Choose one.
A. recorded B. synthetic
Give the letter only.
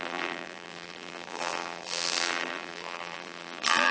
B